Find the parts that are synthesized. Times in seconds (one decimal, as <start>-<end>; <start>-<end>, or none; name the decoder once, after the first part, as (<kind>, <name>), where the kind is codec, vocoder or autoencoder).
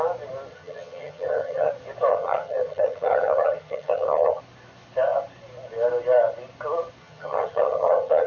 0.5-1.7 (vocoder, HiFi-GAN); 2.1-4.4; 7.0-8.3